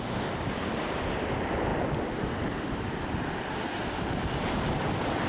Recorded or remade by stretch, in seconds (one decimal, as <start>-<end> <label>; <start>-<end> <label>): 0.0-5.3 recorded